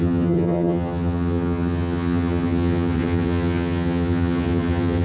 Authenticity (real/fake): fake